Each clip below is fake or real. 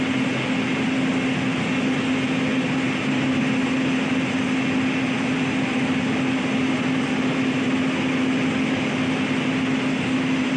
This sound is real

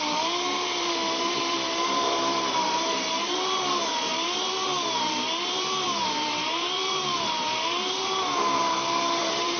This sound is fake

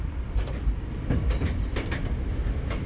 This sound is real